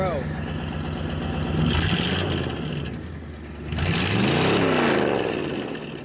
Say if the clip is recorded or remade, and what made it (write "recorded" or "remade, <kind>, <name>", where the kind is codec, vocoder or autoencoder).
recorded